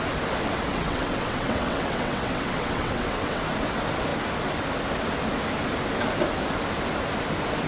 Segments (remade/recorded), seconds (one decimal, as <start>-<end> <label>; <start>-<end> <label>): 0.0-0.7 recorded; 0.7-3.4 remade; 3.4-7.7 recorded